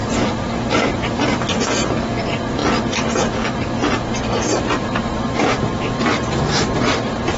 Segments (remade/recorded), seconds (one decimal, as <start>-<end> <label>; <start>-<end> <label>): 0.0-1.6 remade; 1.6-4.5 recorded; 4.5-7.4 remade